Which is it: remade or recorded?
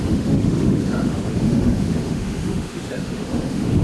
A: remade